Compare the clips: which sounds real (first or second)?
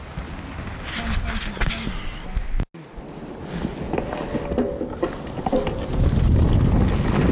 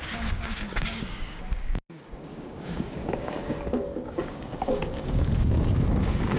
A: first